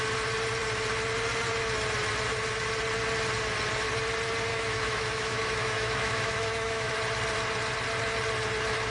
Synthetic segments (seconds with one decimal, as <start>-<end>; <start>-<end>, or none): 4.5-6.9